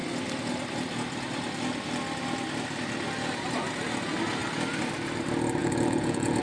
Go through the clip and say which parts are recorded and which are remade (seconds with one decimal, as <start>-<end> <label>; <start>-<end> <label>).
0.0-5.6 recorded; 5.6-6.4 remade